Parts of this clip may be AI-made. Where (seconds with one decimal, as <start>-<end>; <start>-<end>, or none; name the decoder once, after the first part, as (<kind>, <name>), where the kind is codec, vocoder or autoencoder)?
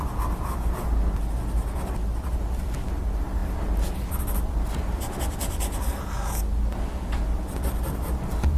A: none